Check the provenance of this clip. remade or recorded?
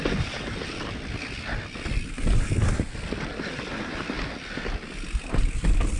recorded